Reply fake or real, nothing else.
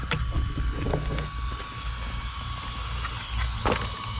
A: real